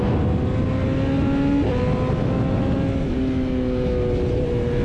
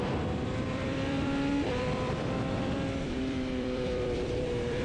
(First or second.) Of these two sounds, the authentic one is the first